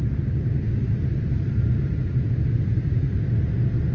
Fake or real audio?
real